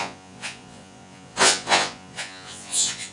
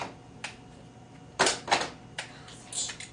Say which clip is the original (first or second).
second